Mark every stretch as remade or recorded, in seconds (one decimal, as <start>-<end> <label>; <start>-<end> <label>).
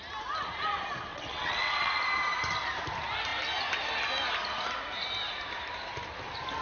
0.0-1.1 recorded; 1.1-1.9 remade; 1.9-6.6 recorded